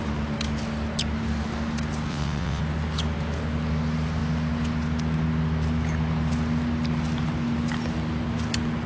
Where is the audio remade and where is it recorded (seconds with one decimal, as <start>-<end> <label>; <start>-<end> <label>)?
0.0-2.1 recorded; 2.1-2.6 remade; 2.6-8.9 recorded